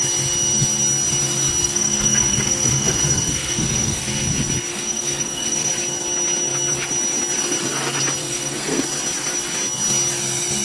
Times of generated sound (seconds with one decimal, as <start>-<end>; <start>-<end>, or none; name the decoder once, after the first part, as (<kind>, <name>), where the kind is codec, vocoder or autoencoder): 1.6-4.0 (codec, SNAC); 4.7-5.7; 8.2-8.8